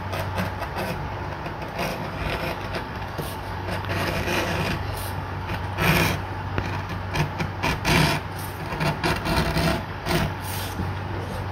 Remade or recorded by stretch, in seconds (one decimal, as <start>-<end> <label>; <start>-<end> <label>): 0.0-1.9 recorded; 1.9-5.6 remade; 5.6-9.7 recorded; 9.7-10.8 remade; 10.8-11.5 recorded